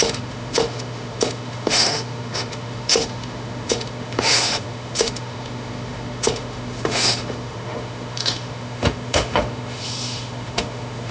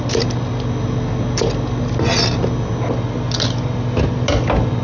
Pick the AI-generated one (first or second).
first